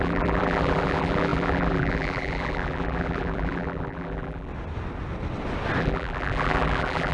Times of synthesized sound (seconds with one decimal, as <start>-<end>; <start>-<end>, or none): 0.0-4.5; 5.8-7.1